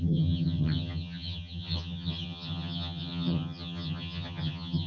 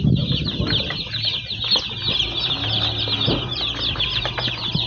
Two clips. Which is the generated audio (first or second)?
first